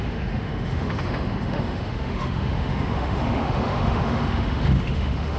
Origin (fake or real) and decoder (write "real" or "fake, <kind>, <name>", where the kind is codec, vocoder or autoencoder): fake, autoencoder, DAC-VAE